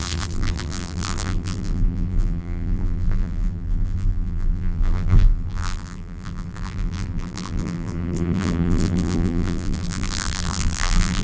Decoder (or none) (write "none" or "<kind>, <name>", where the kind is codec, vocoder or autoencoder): vocoder, BigVGAN v2